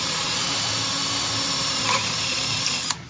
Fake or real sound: real